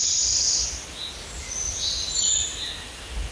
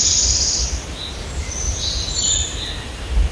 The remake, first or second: second